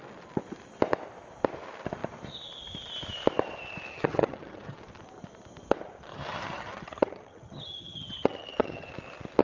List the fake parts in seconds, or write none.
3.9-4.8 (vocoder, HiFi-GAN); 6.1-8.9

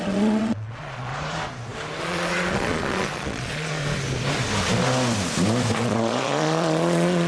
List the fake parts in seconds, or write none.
0.0-1.1 (vocoder, Vocos); 2.0-3.8; 5.8-7.3